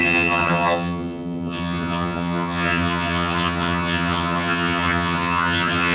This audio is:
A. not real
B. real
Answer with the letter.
A